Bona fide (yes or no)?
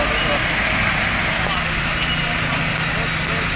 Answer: yes